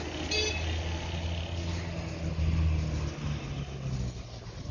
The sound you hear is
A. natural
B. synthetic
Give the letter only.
A